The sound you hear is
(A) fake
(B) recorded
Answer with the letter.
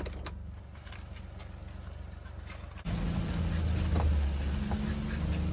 B